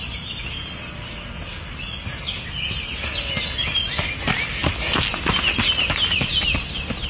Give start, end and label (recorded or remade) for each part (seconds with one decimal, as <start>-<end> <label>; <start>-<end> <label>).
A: 0.0-7.1 recorded